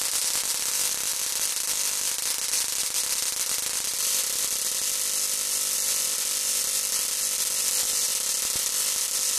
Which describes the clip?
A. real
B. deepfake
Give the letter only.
A